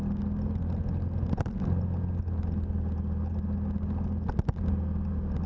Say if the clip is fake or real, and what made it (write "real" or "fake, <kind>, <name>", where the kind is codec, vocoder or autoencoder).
real